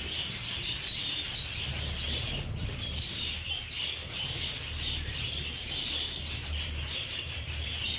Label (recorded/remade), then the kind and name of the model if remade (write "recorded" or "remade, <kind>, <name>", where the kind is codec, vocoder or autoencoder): recorded